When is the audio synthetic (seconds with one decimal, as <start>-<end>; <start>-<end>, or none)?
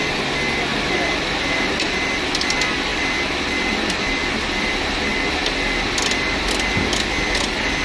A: 0.7-1.7